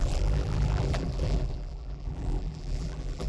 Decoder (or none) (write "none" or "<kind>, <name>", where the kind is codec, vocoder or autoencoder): vocoder, BigVGAN v2